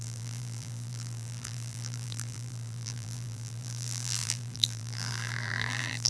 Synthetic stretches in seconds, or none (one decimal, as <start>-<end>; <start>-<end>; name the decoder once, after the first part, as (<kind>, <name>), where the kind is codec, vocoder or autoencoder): 0.0-6.1 (vocoder, BigVGAN v2)